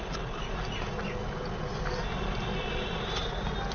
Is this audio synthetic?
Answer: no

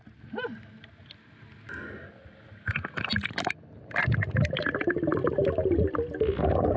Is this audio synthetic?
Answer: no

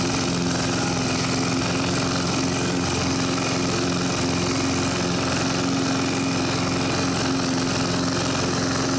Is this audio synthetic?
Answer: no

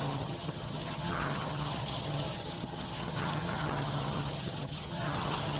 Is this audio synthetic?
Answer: yes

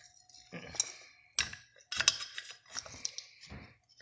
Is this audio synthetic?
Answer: no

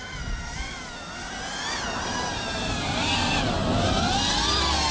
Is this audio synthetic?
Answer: no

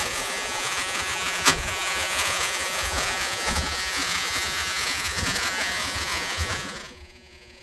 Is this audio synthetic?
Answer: yes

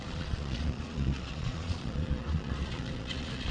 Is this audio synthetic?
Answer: yes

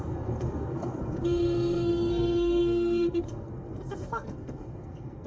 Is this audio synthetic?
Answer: yes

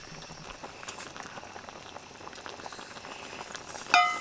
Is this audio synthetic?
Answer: no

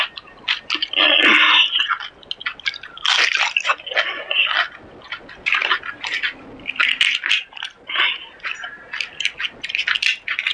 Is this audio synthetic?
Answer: no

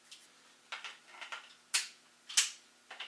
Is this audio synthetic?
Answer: no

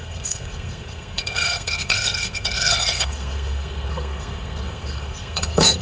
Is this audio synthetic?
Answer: yes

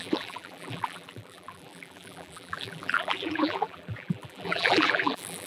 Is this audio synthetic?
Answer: yes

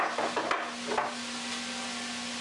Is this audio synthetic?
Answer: no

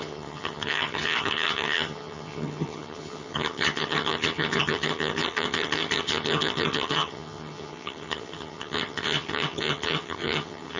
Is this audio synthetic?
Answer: yes